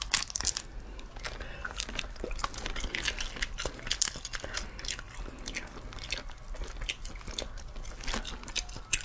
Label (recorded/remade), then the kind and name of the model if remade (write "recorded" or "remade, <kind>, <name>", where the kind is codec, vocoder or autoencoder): recorded